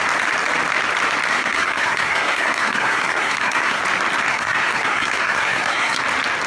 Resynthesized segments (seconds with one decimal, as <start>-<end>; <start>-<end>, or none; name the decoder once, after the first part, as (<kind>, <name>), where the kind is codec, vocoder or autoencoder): 1.3-3.8 (codec, SNAC); 4.3-6.0